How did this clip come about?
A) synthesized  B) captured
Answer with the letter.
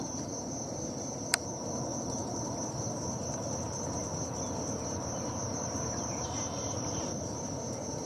A